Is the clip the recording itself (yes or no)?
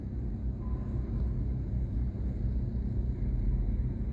yes